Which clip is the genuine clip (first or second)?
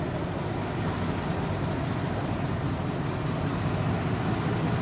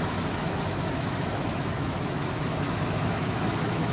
first